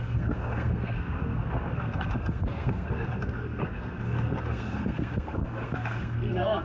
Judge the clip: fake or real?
fake